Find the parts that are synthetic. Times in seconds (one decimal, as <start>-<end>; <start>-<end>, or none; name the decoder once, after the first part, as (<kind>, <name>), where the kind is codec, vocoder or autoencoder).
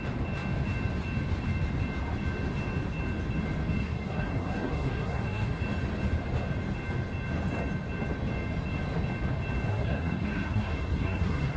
3.8-5.6 (codec, SNAC); 9.7-11.6